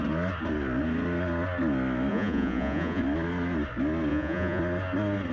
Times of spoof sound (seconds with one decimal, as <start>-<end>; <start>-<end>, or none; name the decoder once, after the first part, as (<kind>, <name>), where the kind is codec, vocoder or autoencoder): 2.1-3.0 (vocoder, Vocos); 4.1-4.6